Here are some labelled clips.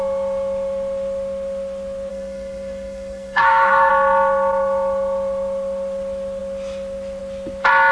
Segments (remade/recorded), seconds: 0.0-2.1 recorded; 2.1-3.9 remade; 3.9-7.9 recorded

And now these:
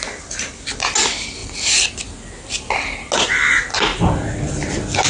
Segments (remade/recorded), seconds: 0.0-5.1 recorded

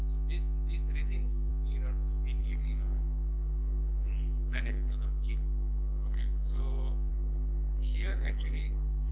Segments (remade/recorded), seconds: 0.0-1.0 recorded; 1.0-1.5 remade; 1.5-2.4 recorded; 2.4-6.6 remade; 6.6-7.1 recorded; 7.1-9.1 remade